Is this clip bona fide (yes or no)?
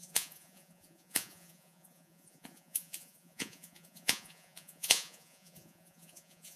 no